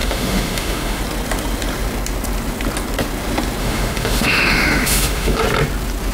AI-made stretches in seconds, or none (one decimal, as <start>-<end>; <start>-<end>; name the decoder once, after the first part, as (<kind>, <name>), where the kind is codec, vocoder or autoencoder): 0.0-1.0 (autoencoder, DAC-VAE); 3.6-5.4